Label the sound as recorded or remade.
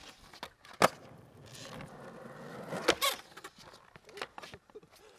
recorded